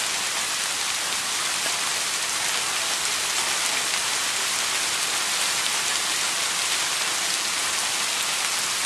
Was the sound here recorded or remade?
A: recorded